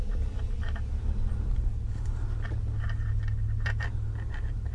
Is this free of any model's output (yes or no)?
yes